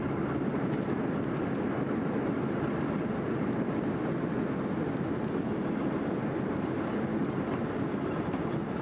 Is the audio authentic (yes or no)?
yes